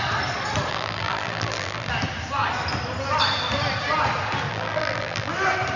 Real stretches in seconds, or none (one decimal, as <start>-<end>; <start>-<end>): 0.0-0.7; 1.9-4.5; 5.3-5.8